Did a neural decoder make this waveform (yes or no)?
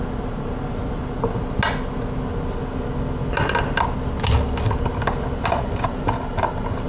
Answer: no